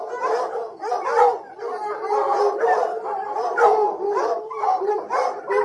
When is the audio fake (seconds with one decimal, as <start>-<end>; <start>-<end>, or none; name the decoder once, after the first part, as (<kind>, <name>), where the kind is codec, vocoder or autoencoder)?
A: none

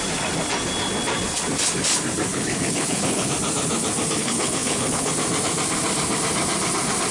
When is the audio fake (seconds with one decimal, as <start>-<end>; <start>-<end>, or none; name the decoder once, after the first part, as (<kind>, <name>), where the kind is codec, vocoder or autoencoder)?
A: 2.3-3.3 (codec, HILCodec); 4.2-5.1